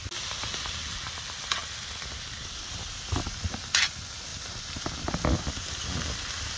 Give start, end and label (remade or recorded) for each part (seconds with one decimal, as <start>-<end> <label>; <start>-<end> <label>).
0.0-4.3 recorded; 4.3-5.1 remade; 5.1-6.6 recorded